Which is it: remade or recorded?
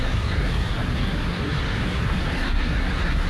remade